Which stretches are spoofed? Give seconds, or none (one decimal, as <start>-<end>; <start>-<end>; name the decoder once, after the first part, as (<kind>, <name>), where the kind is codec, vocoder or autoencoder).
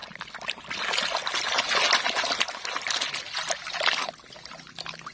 none